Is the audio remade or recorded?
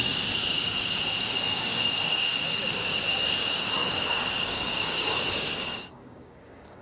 remade